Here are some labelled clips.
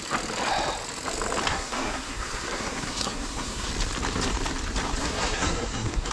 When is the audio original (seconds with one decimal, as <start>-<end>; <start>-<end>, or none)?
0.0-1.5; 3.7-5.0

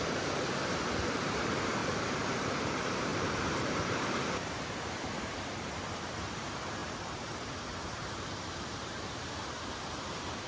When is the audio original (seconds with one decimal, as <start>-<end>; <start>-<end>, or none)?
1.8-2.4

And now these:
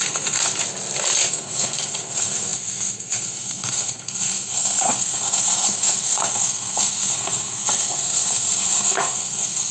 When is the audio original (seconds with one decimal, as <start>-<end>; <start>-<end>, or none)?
0.4-1.3

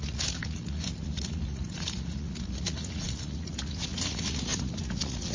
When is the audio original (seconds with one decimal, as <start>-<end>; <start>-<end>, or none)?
none

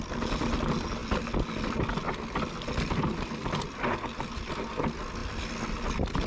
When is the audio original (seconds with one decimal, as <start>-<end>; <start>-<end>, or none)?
0.0-6.3

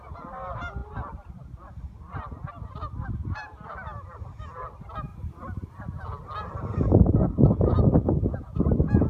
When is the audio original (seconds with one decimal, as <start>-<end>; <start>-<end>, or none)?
0.0-9.1

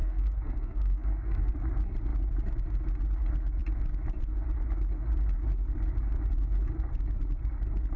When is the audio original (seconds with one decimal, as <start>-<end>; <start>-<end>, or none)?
1.5-8.0

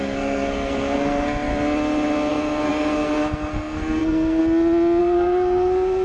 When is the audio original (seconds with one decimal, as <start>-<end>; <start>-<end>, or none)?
1.5-2.3; 4.4-5.0